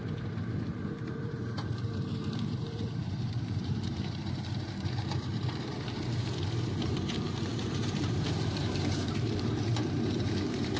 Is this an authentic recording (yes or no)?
no